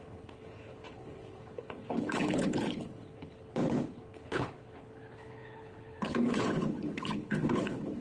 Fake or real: fake